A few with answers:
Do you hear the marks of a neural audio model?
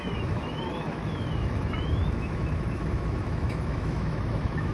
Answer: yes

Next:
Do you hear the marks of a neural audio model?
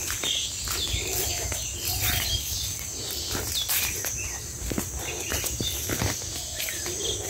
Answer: no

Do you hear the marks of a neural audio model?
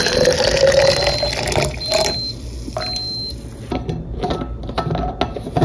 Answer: no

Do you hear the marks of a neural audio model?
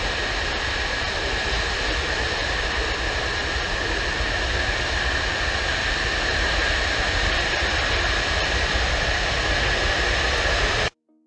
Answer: yes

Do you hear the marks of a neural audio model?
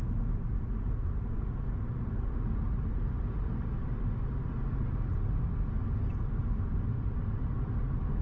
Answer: no